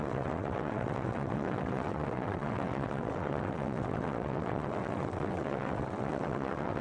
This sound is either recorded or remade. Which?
remade